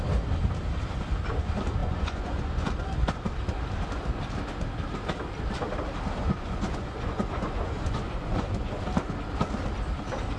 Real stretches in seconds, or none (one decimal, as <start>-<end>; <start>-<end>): 0.0-1.8; 2.7-6.2; 8.8-10.4